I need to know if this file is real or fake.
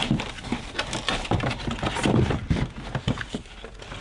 real